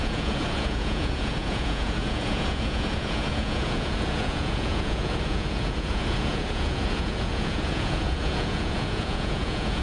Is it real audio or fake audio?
fake